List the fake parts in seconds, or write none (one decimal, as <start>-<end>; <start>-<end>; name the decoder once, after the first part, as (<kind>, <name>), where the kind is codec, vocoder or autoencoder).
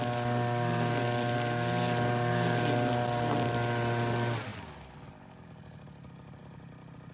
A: none